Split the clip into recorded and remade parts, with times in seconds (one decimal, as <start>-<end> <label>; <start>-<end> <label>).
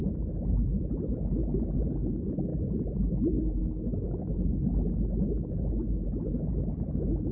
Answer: 0.0-1.4 remade; 1.4-2.1 recorded; 2.1-2.5 remade; 2.5-3.1 recorded; 3.1-7.3 remade